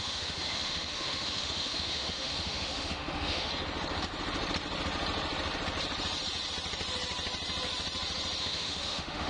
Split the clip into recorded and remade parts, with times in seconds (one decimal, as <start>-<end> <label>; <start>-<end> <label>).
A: 0.0-3.5 remade; 3.5-8.4 recorded; 8.4-9.3 remade